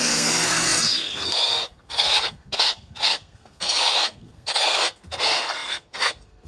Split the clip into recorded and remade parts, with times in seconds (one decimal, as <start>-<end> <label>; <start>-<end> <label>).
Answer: 0.0-6.5 remade